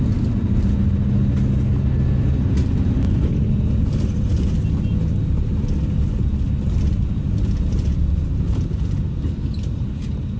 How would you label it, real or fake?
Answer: real